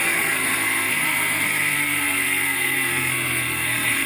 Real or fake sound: fake